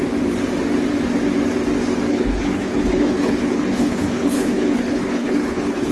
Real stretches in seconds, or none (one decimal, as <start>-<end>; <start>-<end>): 0.0-2.1